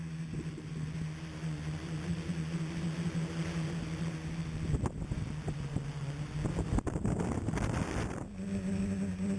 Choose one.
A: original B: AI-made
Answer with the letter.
A